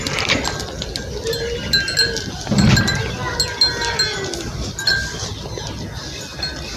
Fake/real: real